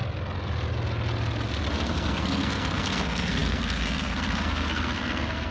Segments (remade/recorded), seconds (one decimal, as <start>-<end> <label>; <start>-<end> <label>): 0.0-1.7 recorded; 1.7-5.5 remade